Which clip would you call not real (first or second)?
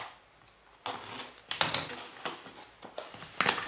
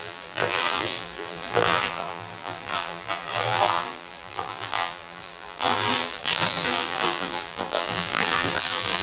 second